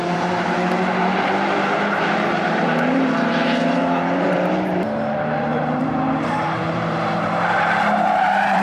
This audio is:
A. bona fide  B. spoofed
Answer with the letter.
B